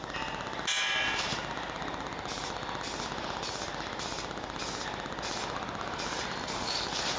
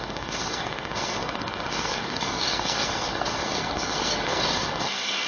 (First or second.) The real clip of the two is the first